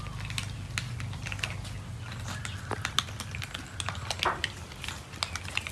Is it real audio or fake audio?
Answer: real